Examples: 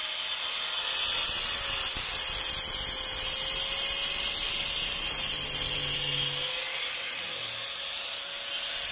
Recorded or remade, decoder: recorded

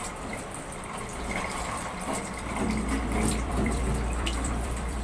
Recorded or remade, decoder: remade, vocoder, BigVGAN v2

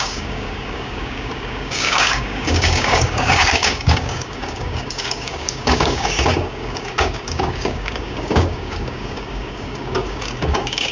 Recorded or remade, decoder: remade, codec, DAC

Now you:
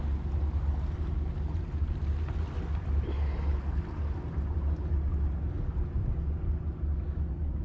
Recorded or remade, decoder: recorded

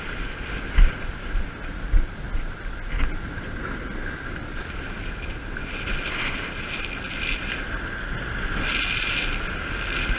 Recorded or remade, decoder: recorded